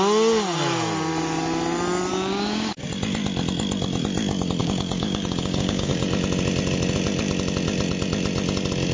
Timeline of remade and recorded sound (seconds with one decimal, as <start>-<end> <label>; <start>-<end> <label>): 0.0-2.1 recorded; 2.1-2.8 remade; 2.8-4.6 recorded; 4.6-5.9 remade; 5.9-8.9 recorded